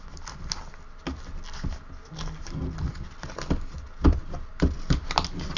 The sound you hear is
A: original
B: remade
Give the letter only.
A